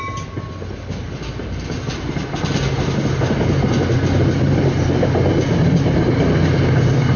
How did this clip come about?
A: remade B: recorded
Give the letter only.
B